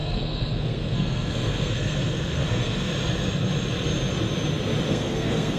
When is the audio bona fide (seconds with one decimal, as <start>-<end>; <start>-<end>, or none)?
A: 2.9-4.9